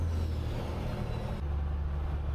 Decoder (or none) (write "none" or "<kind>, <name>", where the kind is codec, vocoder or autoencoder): none